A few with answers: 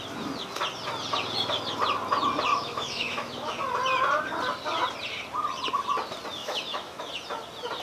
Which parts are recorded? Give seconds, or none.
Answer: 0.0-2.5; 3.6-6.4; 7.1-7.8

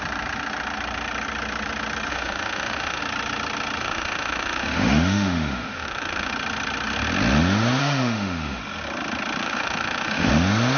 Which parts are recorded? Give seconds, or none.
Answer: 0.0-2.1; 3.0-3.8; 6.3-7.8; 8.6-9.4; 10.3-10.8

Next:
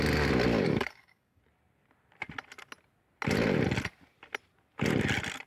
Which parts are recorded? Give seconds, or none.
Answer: 0.0-0.5; 1.4-5.5

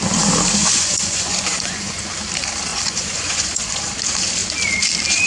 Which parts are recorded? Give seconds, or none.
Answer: 0.0-0.6; 2.0-2.7; 3.8-5.3